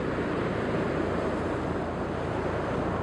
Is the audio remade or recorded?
recorded